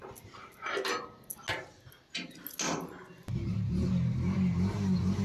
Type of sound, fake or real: real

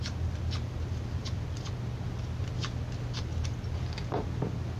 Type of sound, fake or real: real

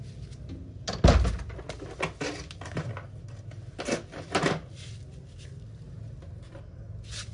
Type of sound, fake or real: real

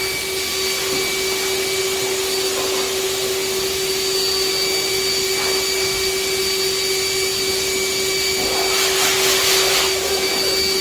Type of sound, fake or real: real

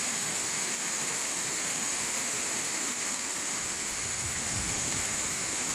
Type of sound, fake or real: fake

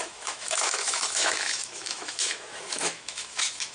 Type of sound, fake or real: fake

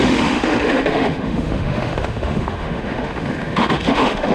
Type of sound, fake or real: fake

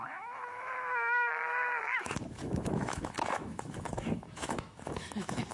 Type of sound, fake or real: fake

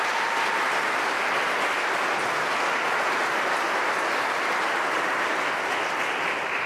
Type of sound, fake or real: real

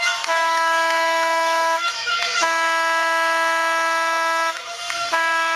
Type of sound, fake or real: fake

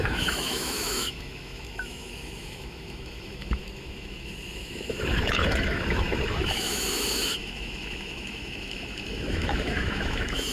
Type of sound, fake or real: fake